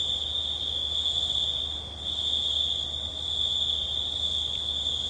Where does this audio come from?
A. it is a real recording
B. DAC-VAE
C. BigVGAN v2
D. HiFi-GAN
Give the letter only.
A